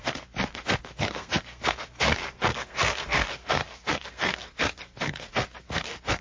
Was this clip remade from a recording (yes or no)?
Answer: yes